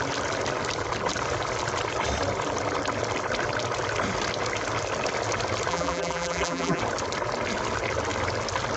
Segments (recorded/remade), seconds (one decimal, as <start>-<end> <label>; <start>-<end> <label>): 0.0-5.7 recorded; 5.7-6.8 remade; 6.8-8.8 recorded